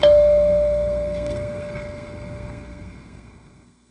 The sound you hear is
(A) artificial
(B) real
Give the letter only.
A